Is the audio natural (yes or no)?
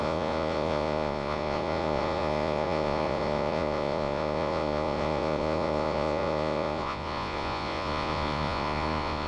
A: no